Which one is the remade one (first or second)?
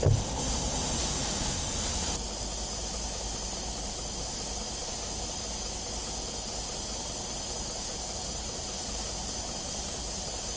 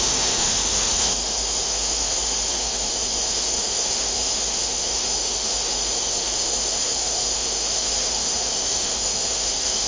second